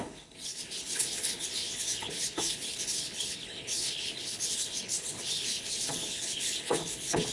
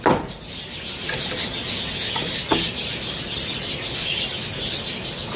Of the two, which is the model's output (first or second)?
first